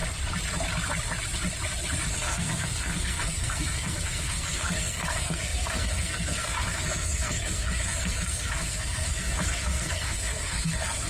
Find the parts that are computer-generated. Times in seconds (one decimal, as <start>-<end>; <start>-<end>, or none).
2.1-11.1